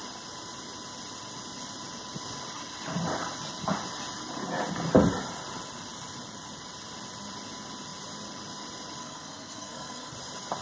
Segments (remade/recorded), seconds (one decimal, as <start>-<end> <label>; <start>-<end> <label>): 0.0-9.0 recorded; 9.0-10.1 remade; 10.1-10.6 recorded